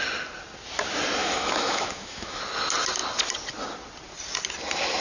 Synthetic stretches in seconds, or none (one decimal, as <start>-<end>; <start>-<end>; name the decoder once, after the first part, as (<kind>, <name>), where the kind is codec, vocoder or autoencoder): 1.2-2.4 (autoencoder, DAC-VAE)